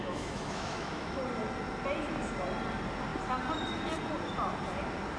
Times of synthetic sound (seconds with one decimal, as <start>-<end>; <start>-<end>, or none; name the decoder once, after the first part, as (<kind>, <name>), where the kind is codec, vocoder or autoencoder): 0.0-1.2 (autoencoder, DAC-VAE)